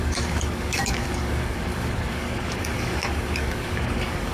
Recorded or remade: remade